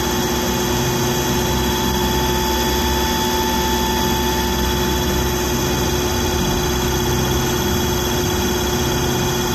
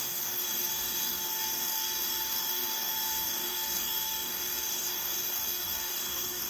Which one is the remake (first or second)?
second